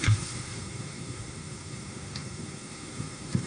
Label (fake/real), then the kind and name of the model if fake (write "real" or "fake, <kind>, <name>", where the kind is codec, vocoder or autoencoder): fake, codec, SNAC